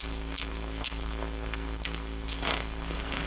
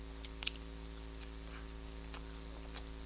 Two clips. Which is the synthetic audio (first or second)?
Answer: first